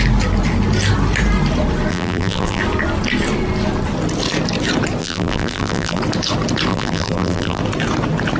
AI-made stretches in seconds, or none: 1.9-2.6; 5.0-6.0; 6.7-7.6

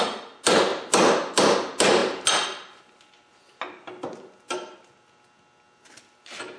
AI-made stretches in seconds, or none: none

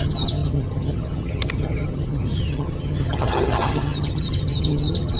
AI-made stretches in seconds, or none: 0.0-5.2

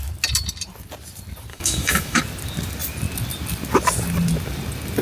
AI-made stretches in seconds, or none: 1.5-2.2

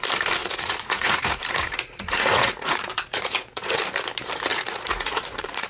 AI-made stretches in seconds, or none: 0.4-3.8; 4.5-5.7

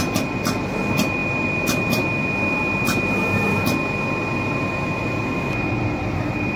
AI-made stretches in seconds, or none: none